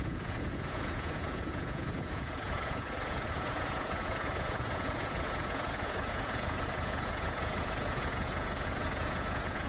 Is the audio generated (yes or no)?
yes